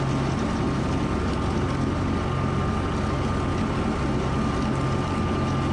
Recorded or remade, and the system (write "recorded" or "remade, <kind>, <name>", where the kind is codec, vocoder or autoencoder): recorded